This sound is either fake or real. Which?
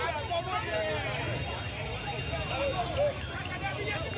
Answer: real